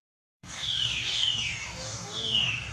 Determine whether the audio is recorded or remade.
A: remade